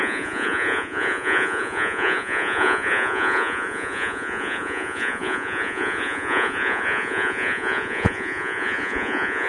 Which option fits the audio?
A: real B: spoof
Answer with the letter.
B